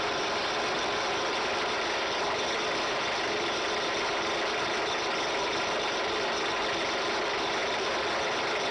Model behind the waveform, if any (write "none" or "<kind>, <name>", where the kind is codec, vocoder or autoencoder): none